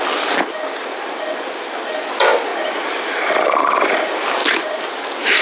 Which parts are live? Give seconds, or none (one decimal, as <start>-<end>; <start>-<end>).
0.0-2.5; 3.9-4.4